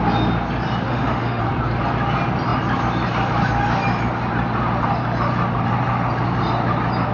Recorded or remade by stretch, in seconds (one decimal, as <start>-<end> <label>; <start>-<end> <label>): 0.0-0.9 recorded; 0.9-1.4 remade; 1.4-7.1 recorded